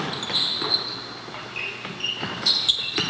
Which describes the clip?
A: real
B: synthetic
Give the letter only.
A